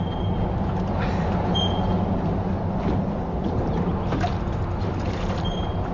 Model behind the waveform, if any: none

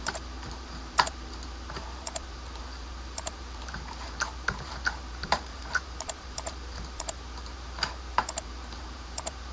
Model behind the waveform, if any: vocoder, BigVGAN v2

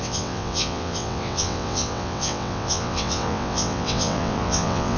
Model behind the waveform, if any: vocoder, WaveNeXt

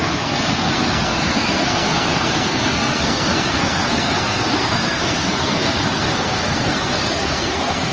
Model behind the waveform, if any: codec, SNAC